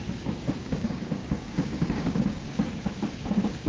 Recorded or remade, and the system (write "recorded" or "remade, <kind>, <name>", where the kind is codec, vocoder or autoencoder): remade, codec, DAC